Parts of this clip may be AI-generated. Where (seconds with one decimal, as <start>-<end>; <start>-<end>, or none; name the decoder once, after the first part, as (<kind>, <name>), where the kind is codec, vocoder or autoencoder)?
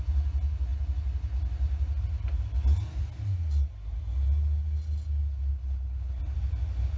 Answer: 5.5-6.2 (codec, HILCodec)